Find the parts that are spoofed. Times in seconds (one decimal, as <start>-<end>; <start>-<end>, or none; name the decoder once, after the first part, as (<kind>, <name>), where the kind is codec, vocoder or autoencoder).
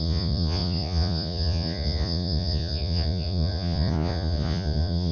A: 0.0-5.1 (vocoder, Vocos)